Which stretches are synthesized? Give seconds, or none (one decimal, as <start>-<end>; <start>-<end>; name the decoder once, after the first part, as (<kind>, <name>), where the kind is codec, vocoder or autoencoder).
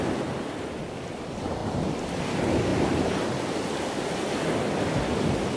1.6-2.2 (vocoder, BigVGAN v2)